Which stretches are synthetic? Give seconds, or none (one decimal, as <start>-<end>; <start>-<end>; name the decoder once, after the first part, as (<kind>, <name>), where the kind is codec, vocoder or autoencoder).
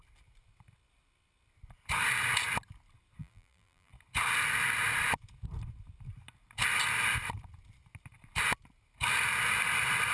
3.2-3.9 (vocoder, BigVGAN v2)